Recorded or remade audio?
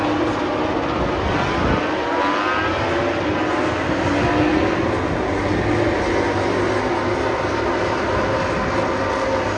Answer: recorded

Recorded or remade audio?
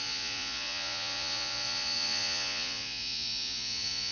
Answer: remade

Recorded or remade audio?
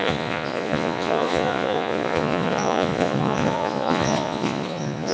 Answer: remade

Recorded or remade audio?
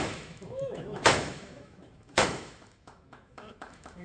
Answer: remade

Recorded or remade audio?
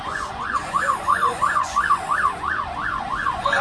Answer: remade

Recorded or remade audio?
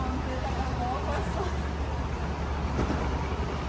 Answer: recorded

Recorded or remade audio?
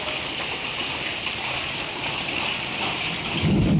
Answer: recorded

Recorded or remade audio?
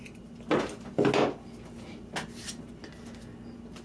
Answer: recorded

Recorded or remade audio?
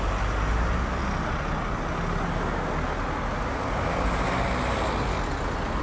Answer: recorded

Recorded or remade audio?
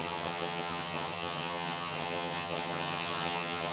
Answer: remade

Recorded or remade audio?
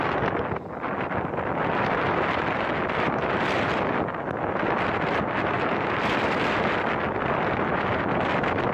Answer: remade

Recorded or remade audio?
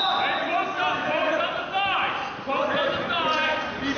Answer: recorded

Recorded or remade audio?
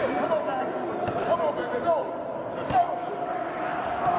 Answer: recorded